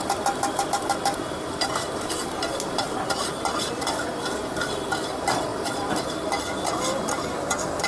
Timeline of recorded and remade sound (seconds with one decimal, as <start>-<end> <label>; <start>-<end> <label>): 0.0-7.9 recorded